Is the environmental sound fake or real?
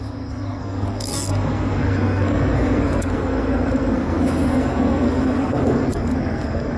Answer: fake